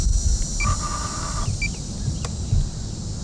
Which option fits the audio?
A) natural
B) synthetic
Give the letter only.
A